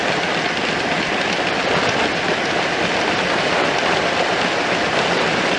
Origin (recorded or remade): recorded